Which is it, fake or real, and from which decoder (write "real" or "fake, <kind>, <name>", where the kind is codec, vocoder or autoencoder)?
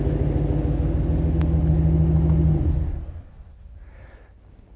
real